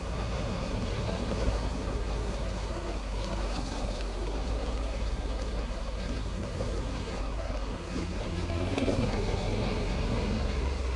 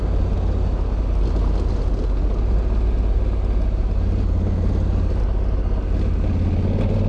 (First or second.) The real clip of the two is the second